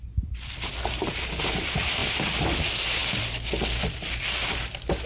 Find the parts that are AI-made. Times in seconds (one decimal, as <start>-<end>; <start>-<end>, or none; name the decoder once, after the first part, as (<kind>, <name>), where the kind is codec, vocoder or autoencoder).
none